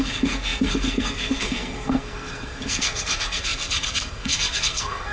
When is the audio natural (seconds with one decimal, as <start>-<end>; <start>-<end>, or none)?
none